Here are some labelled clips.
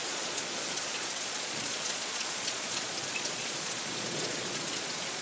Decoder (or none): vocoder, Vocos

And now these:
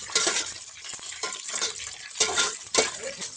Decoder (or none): none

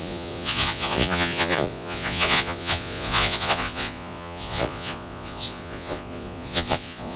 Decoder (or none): vocoder, Vocos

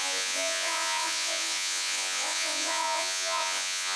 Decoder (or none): vocoder, Vocos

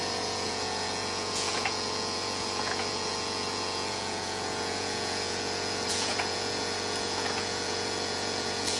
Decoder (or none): vocoder, Vocos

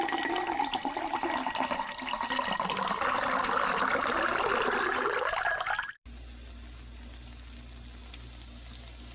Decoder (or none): none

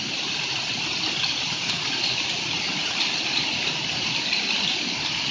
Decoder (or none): none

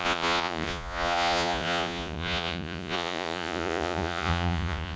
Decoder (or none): vocoder, Vocos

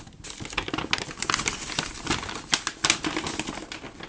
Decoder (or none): none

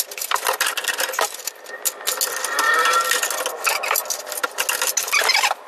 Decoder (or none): none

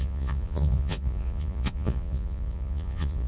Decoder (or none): vocoder, Vocos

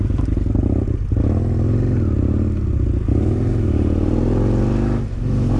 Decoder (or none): none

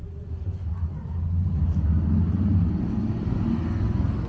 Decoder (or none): none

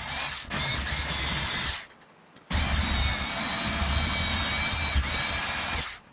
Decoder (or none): none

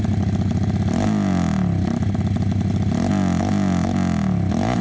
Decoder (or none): none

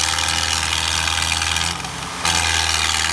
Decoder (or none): none